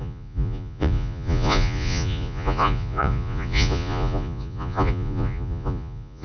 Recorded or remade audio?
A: remade